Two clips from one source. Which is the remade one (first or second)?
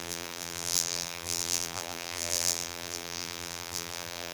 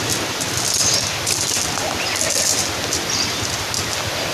first